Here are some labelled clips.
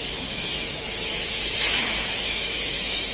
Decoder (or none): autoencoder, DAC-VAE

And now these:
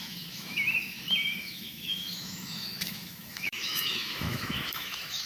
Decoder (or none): autoencoder, DAC-VAE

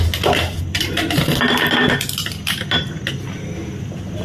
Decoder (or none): none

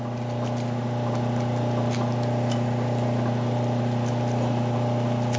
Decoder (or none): none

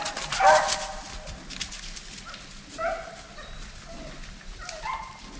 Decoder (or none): none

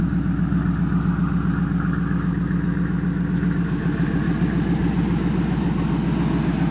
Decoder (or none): none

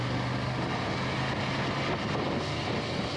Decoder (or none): none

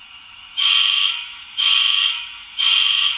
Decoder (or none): autoencoder, DAC-VAE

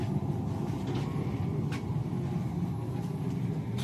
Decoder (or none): none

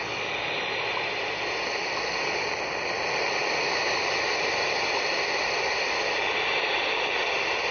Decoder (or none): none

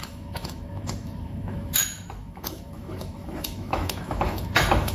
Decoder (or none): autoencoder, DAC-VAE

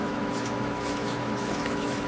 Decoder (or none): autoencoder, DAC-VAE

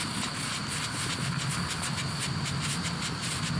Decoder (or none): none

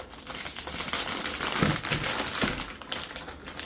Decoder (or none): none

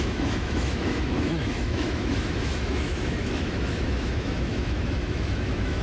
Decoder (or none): autoencoder, DAC-VAE